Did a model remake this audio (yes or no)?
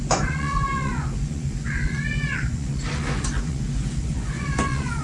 yes